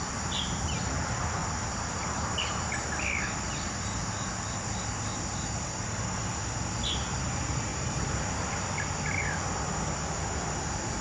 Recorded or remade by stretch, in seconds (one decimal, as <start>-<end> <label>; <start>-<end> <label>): 0.0-4.0 remade; 4.0-7.2 recorded; 7.2-11.0 remade